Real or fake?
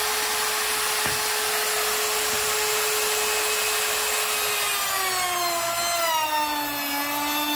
real